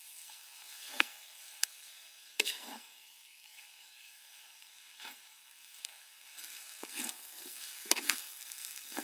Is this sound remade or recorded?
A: remade